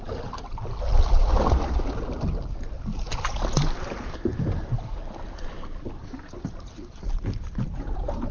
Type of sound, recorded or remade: recorded